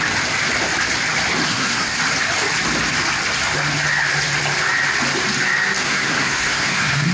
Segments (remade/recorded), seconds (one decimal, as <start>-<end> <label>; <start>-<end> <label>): 0.0-1.5 recorded; 1.5-2.0 remade; 2.0-5.8 recorded; 5.8-7.1 remade

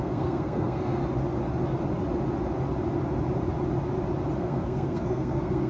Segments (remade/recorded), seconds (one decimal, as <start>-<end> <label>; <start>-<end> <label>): 0.0-1.0 remade; 1.0-4.4 recorded; 4.4-5.7 remade